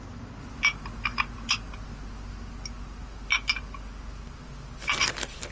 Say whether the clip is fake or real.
real